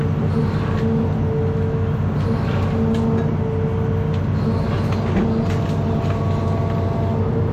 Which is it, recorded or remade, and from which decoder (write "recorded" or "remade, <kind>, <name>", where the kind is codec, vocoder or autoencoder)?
recorded